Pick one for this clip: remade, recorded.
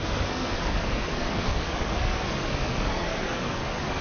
remade